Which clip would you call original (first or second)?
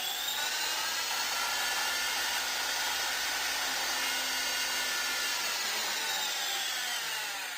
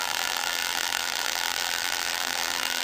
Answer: first